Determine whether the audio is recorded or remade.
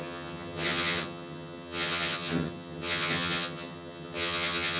remade